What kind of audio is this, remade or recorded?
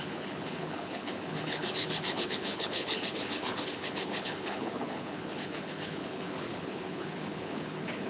remade